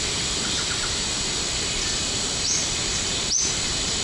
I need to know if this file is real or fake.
real